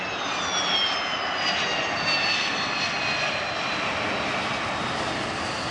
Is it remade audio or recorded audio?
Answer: recorded